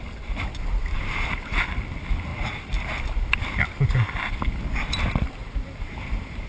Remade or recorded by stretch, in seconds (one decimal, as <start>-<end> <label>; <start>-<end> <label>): 0.0-0.9 recorded; 0.9-1.6 remade; 1.6-5.4 recorded; 5.4-6.5 remade